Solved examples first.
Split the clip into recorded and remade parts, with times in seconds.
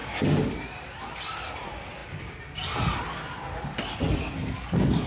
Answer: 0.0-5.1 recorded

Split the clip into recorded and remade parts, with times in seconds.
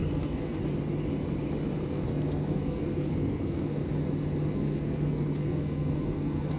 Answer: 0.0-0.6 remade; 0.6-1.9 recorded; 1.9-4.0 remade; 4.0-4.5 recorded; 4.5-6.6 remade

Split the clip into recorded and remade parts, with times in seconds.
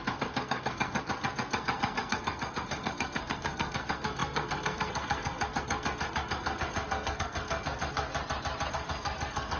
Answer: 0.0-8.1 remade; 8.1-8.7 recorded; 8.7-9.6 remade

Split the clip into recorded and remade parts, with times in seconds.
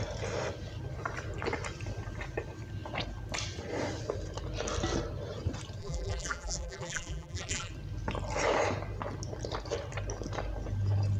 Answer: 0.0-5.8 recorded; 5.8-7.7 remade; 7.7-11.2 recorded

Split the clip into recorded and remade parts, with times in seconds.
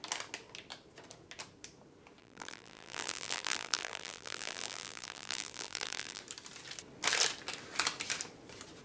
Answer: 0.0-2.2 recorded; 2.2-6.2 remade; 6.2-8.8 recorded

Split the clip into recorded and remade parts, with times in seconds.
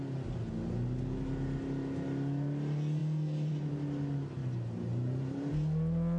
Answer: 0.0-3.0 recorded; 3.0-3.5 remade; 3.5-4.4 recorded; 4.4-5.5 remade; 5.5-6.2 recorded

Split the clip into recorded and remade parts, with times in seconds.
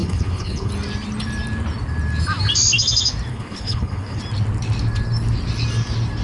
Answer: 0.0-0.7 remade; 0.7-3.3 recorded; 3.3-4.2 remade; 4.2-6.2 recorded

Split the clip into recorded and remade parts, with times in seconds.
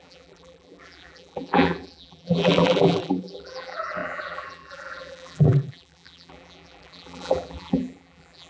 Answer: 0.0-8.5 remade